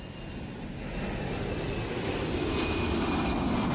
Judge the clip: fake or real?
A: real